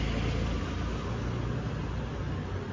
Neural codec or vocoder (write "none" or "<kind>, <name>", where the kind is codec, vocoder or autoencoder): none